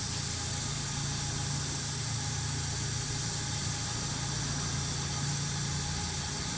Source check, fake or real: real